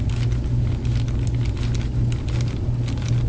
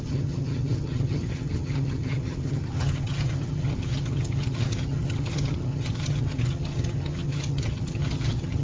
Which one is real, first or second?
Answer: first